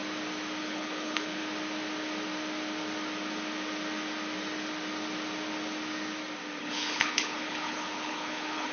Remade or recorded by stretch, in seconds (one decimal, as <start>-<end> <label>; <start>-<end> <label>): 0.0-0.6 recorded; 0.6-1.4 remade; 1.4-6.6 recorded; 6.6-8.7 remade